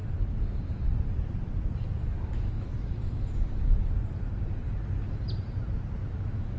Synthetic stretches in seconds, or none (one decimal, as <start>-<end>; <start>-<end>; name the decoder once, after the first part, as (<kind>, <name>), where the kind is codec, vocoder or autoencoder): 2.0-3.9 (autoencoder, DAC-VAE); 6.0-6.6